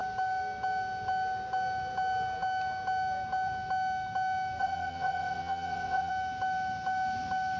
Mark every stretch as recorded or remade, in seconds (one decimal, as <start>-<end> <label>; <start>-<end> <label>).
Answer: 0.0-4.6 recorded; 4.6-6.1 remade; 6.1-7.6 recorded